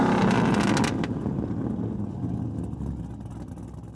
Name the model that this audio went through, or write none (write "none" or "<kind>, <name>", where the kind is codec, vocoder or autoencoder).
none